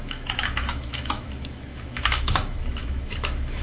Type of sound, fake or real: fake